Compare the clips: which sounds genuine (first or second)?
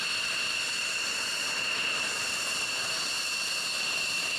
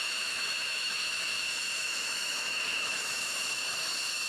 first